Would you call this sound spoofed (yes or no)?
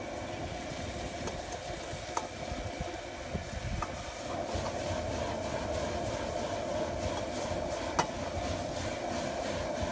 no